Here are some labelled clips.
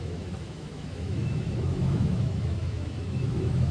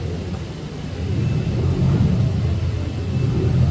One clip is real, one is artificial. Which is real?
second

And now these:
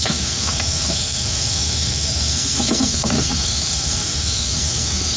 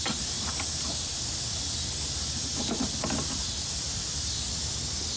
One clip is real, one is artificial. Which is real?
second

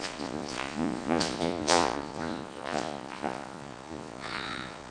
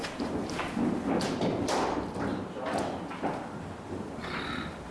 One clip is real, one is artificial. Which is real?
second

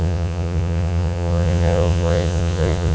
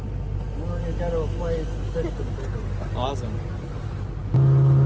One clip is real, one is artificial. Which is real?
second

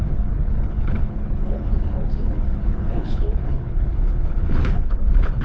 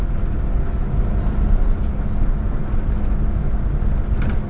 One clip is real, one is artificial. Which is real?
second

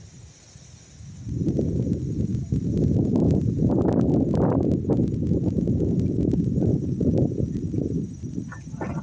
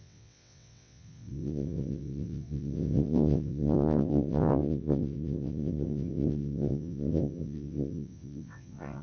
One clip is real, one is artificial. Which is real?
first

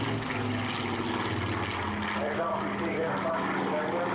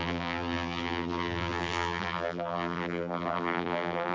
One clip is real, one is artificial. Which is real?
first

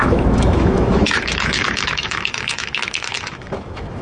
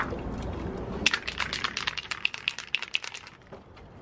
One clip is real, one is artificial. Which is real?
second